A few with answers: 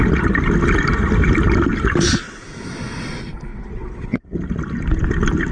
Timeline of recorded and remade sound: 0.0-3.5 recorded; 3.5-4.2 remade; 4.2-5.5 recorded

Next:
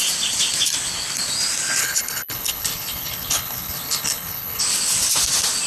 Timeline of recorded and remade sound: 0.0-1.8 recorded; 1.8-4.6 remade; 4.6-5.7 recorded

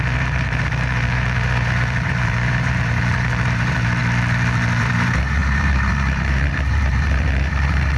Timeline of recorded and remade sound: 0.0-4.0 remade; 4.0-4.8 recorded; 4.8-8.0 remade

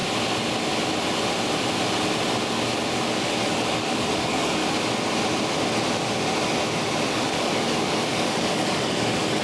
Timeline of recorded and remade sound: 0.0-3.1 recorded; 3.1-4.6 remade; 4.6-7.1 recorded; 7.1-9.4 remade

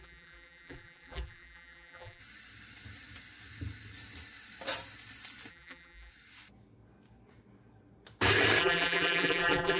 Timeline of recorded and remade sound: 0.0-2.2 remade; 2.2-5.5 recorded; 5.5-6.1 remade; 6.1-8.6 recorded; 8.6-9.8 remade

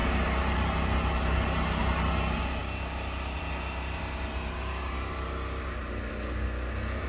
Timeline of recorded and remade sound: 0.0-7.1 recorded

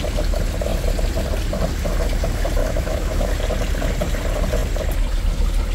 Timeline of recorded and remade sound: 0.0-2.6 recorded; 2.6-3.3 remade; 3.3-5.7 recorded

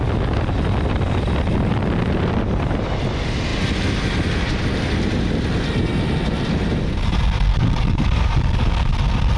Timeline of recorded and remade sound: 0.0-7.5 recorded; 7.5-8.9 remade; 8.9-9.4 recorded